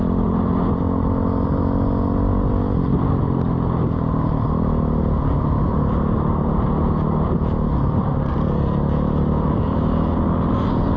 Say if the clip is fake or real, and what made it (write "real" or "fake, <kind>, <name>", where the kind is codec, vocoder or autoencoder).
real